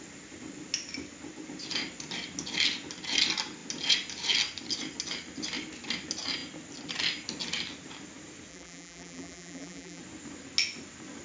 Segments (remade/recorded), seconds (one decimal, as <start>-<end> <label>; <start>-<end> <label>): 0.0-8.5 recorded; 8.5-10.0 remade; 10.0-11.2 recorded